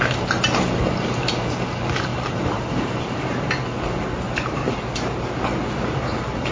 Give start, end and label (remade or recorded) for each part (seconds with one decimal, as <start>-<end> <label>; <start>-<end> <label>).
0.0-2.1 recorded; 2.1-3.0 remade; 3.0-6.5 recorded